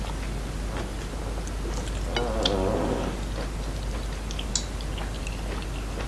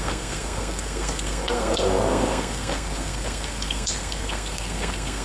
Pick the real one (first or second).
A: first